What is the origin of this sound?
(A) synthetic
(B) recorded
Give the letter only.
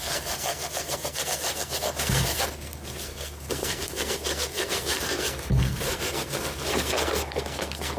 A